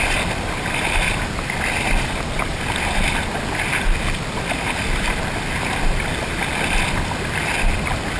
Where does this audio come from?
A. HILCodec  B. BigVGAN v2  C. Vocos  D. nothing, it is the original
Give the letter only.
D